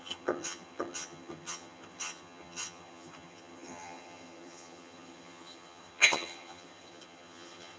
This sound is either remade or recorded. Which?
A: remade